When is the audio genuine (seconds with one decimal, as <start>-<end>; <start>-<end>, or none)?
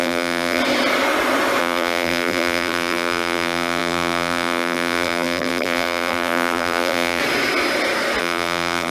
0.6-1.6; 7.2-8.2